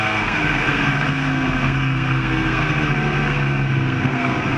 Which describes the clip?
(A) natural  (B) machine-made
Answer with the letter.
B